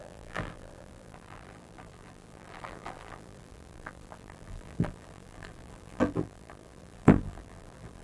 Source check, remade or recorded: remade